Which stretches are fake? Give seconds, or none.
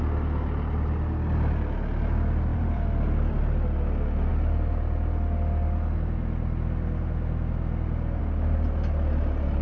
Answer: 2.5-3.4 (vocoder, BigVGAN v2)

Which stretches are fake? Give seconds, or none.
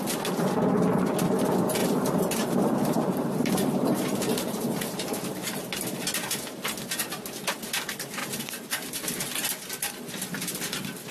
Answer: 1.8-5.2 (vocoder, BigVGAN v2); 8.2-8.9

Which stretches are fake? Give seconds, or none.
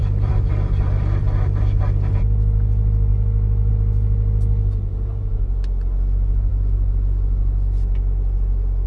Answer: 0.0-1.8 (vocoder, BigVGAN v2); 3.1-3.7